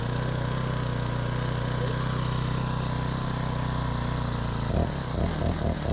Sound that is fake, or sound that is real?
real